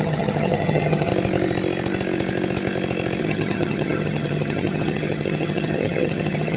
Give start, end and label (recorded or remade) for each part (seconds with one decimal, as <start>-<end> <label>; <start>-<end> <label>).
0.0-1.1 remade; 1.1-3.2 recorded; 3.2-6.6 remade